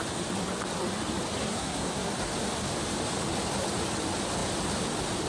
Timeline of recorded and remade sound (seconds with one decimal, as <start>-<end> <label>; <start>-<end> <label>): 0.0-1.4 recorded; 1.4-2.1 remade; 2.1-5.3 recorded